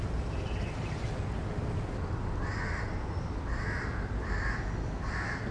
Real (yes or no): yes